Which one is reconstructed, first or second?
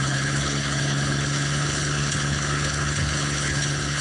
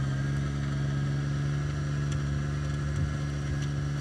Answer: first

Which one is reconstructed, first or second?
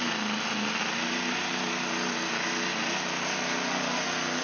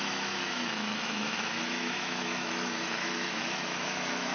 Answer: second